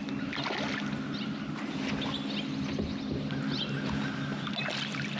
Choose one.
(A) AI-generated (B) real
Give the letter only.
B